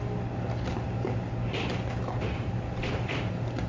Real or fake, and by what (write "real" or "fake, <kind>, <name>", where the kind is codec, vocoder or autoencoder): real